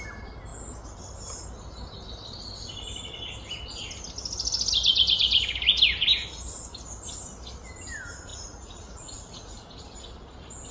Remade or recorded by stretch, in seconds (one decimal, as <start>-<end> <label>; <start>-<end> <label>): 0.0-8.3 recorded; 8.3-9.7 remade; 9.7-10.7 recorded